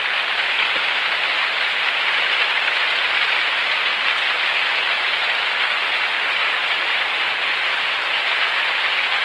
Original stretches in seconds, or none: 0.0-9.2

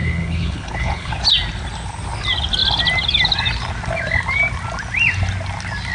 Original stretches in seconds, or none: 1.1-5.9

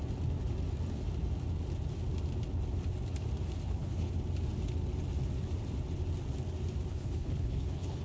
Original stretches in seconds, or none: 0.0-3.6; 4.1-6.9

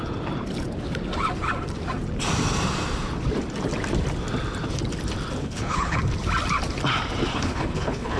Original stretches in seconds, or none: 0.0-5.4; 6.0-7.3

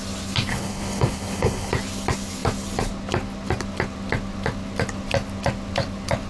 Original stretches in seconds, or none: 0.0-0.5; 1.7-6.3

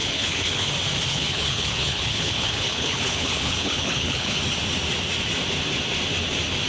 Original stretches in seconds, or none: 0.7-1.1; 4.4-6.7